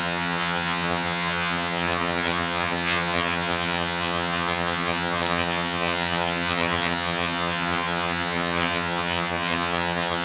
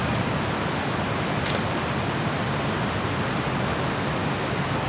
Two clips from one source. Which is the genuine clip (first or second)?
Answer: second